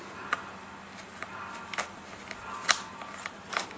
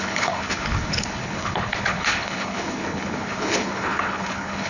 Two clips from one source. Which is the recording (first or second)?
first